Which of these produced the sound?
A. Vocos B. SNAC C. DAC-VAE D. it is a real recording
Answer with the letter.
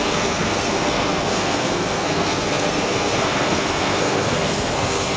B